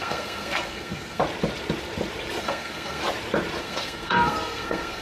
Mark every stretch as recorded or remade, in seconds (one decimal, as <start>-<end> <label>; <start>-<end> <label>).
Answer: 0.0-1.2 remade; 1.2-2.4 recorded; 2.4-3.0 remade; 3.0-3.6 recorded; 3.6-5.0 remade